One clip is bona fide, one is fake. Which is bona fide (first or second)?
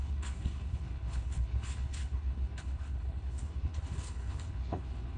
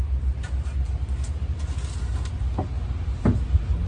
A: second